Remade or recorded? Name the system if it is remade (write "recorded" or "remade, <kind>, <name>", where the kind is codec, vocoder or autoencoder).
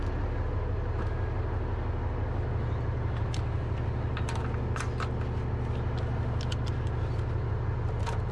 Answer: recorded